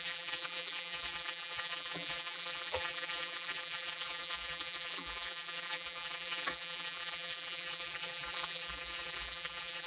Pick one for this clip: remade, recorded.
remade